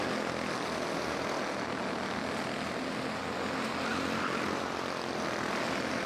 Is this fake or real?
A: real